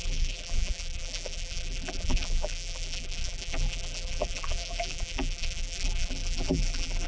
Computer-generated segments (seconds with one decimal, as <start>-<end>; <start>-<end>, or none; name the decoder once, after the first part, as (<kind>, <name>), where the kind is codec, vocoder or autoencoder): 0.0-7.1 (vocoder, BigVGAN v2)